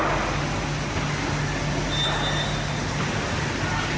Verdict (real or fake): real